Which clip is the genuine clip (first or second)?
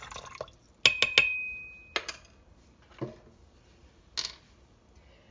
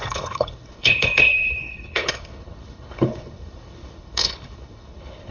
first